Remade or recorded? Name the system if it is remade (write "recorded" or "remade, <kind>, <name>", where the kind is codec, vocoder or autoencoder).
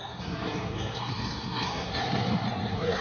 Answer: remade, codec, SNAC